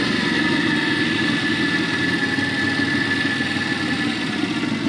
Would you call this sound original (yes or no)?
yes